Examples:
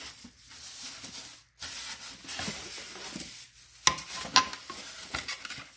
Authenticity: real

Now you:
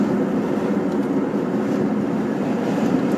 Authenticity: real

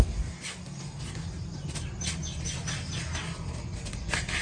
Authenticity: real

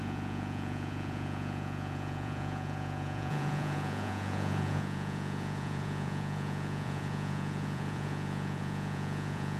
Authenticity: fake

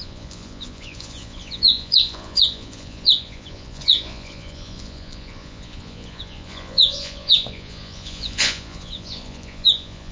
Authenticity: fake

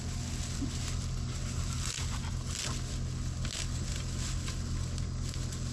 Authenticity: real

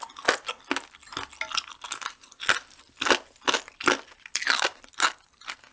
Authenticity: real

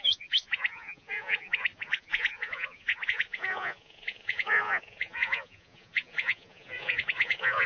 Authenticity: fake